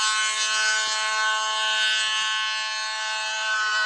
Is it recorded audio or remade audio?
recorded